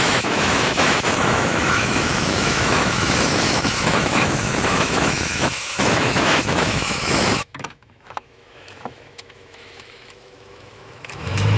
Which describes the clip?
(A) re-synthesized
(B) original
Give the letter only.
A